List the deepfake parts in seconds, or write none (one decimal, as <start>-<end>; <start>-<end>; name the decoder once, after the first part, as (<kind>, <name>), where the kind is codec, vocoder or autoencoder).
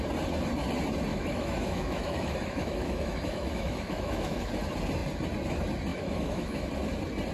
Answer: 1.1-4.5 (autoencoder, DAC-VAE); 5.9-6.7